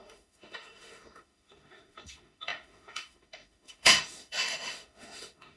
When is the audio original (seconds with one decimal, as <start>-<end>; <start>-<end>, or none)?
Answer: none